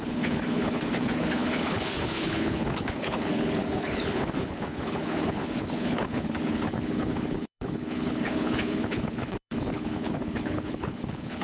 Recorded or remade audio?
remade